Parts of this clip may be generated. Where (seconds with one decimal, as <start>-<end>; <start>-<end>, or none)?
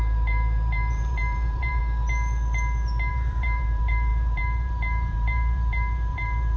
0.0-1.8; 3.1-6.6